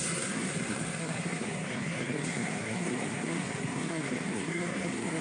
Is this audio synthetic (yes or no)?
yes